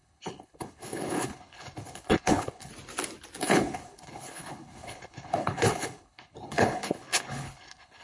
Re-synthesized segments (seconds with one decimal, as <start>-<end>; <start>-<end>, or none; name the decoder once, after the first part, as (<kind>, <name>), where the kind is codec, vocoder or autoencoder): 0.0-2.7 (codec, HILCodec); 3.4-8.0